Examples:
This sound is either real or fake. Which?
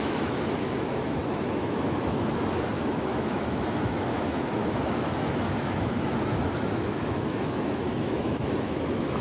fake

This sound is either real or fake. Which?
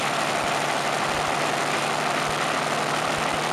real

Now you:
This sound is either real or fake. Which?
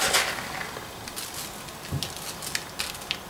real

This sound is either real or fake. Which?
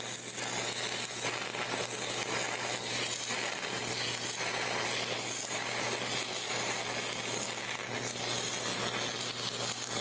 real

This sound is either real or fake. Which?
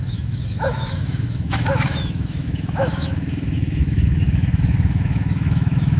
fake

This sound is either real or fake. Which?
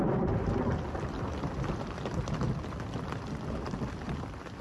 real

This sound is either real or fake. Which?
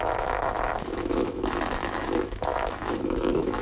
fake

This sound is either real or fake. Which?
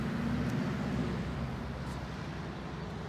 real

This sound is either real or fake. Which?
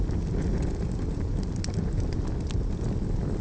real